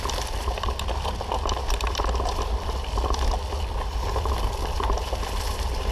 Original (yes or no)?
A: yes